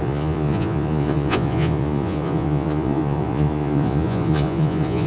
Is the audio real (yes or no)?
no